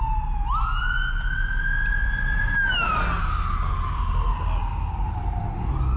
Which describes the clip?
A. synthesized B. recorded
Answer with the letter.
B